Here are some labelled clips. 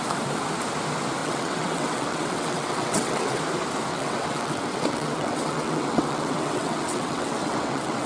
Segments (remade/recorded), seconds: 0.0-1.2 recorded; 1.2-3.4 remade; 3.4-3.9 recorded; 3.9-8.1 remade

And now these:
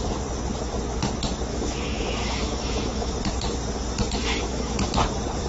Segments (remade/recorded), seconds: 0.0-1.5 recorded; 1.5-3.1 remade; 3.1-4.2 recorded; 4.2-5.0 remade; 5.0-5.5 recorded

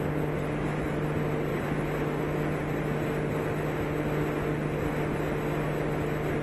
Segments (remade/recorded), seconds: 0.0-0.4 recorded; 0.4-1.0 remade; 1.0-6.4 recorded

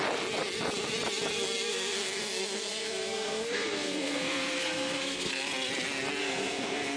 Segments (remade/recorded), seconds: 0.0-1.7 recorded; 1.7-5.3 remade; 5.3-6.2 recorded; 6.2-7.0 remade

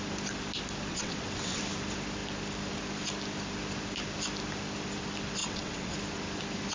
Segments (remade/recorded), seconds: 0.0-0.9 recorded; 0.9-1.6 remade; 1.6-5.4 recorded; 5.4-5.9 remade; 5.9-6.7 recorded

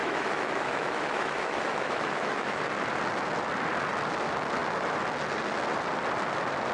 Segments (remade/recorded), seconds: 0.0-2.6 remade; 2.6-6.7 recorded

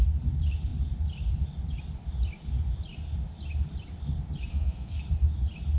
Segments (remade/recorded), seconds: 0.0-4.5 recorded; 4.5-5.0 remade; 5.0-5.8 recorded

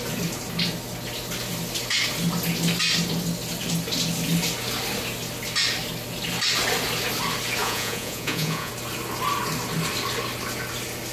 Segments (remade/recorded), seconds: 0.0-7.6 recorded; 7.6-8.7 remade; 8.7-11.1 recorded